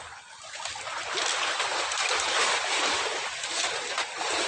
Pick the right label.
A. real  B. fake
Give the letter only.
A